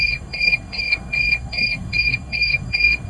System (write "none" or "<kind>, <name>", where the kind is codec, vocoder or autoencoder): codec, SNAC